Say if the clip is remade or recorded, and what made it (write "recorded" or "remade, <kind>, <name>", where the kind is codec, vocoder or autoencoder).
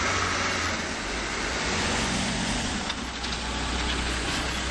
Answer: remade, vocoder, Vocos